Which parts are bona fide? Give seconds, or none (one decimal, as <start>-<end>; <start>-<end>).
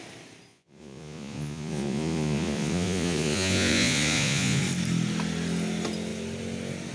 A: 0.0-0.5; 4.6-6.9